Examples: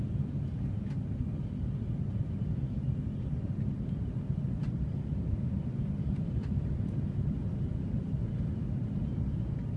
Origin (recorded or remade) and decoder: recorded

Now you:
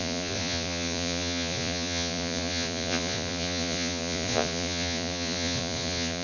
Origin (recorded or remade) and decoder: remade, vocoder, Vocos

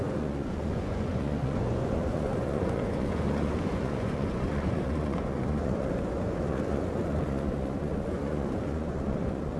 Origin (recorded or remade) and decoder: remade, vocoder, Vocos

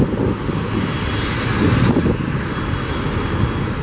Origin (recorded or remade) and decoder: recorded